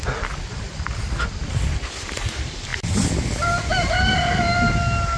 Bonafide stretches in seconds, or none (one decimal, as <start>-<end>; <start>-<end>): 0.0-5.2